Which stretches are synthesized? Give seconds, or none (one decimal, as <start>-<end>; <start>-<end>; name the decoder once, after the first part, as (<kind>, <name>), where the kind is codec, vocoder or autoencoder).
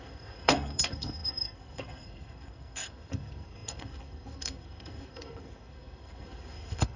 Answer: 0.0-7.0 (codec, SNAC)